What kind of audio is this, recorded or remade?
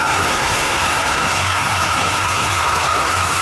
remade